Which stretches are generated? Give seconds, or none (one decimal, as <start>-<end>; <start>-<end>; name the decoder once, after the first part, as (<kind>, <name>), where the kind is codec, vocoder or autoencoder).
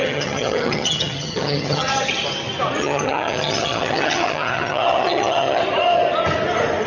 0.0-1.9 (vocoder, HiFi-GAN); 2.8-5.6